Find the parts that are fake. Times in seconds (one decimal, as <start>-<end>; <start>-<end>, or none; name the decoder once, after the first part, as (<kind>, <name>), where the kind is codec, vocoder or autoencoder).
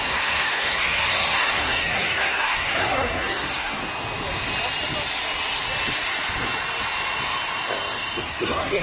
0.0-3.8 (codec, SNAC); 8.2-8.8